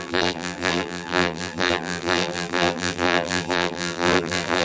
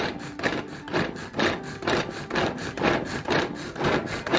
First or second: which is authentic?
second